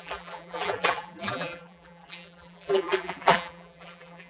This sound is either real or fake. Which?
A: fake